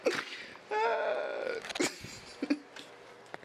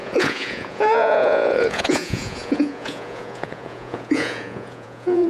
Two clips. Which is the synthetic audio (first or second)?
second